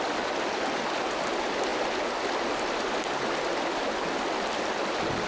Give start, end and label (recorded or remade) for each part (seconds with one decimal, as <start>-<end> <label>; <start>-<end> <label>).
0.0-5.3 recorded